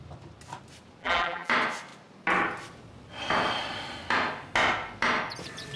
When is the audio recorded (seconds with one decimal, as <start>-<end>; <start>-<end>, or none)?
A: 0.0-1.0; 1.5-5.8